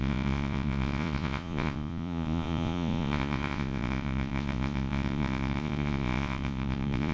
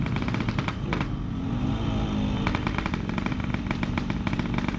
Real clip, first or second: second